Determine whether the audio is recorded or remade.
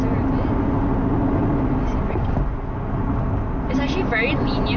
recorded